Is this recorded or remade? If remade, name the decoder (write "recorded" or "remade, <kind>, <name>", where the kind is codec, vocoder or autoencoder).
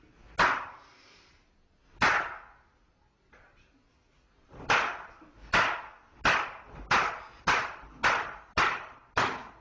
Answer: recorded